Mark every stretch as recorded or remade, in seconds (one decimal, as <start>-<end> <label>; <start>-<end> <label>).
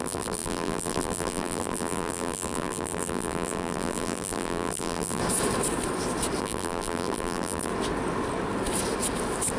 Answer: 0.0-5.2 remade; 5.2-6.4 recorded; 6.4-7.7 remade; 7.7-9.6 recorded